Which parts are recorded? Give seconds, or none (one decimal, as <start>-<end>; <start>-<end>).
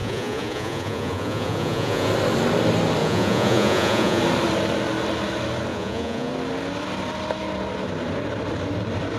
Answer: 2.1-3.0; 4.2-5.7; 6.3-9.2